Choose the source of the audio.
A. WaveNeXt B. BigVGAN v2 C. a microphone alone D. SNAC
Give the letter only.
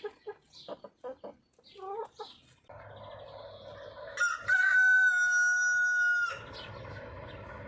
C